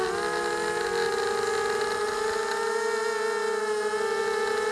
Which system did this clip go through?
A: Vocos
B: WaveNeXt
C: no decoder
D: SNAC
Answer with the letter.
C